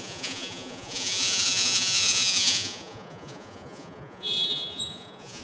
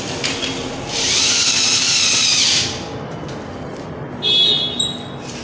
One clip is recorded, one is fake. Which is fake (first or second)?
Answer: first